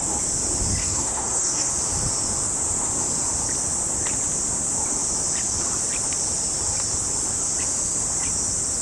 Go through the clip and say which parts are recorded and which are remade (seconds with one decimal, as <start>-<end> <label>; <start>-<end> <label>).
0.0-0.8 recorded; 0.8-1.7 remade; 1.7-8.8 recorded